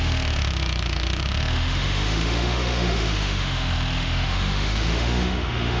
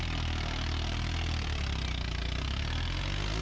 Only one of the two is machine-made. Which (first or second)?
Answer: first